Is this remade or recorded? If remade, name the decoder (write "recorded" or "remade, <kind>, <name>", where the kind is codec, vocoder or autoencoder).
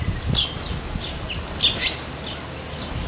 recorded